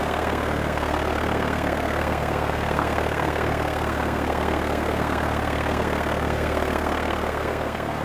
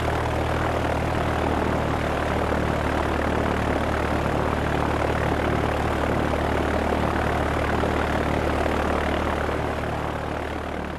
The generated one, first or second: first